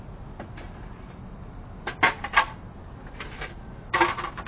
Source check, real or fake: real